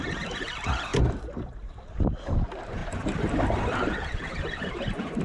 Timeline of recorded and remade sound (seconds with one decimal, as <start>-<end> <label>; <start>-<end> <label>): 0.0-0.9 recorded; 0.9-1.9 remade; 1.9-2.8 recorded; 2.8-5.2 remade